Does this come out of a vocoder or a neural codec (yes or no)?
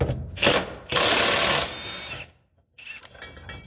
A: no